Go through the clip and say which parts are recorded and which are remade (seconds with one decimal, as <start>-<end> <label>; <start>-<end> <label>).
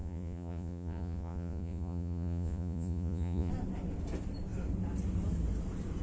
0.0-3.5 remade; 3.5-6.0 recorded